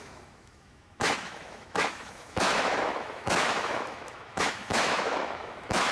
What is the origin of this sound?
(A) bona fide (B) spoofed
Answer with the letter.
B